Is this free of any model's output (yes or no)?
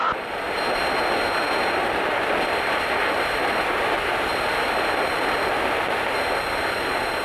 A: yes